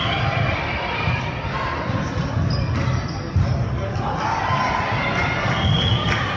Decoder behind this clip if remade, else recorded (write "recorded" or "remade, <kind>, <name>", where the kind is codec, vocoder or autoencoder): recorded